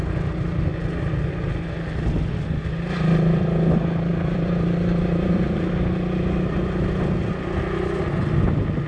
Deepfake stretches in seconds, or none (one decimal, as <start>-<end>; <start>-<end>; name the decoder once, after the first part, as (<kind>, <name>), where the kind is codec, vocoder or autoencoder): 4.1-5.7 (vocoder, BigVGAN v2)